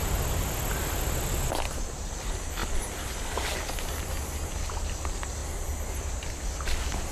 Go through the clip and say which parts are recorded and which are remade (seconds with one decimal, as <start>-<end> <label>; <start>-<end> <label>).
0.0-7.1 recorded